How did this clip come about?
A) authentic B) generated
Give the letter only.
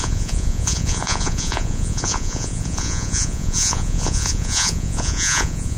B